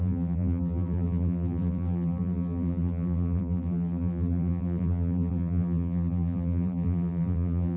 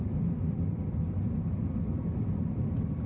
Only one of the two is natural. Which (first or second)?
second